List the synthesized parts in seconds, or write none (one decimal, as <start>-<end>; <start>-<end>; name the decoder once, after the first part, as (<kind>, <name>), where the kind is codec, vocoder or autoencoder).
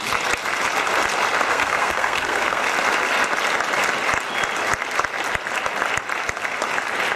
1.5-2.6 (codec, SNAC)